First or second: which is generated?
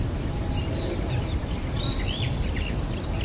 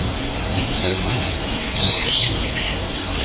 second